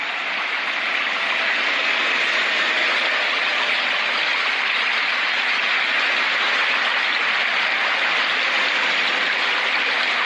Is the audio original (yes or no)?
yes